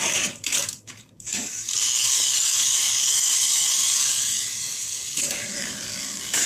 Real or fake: fake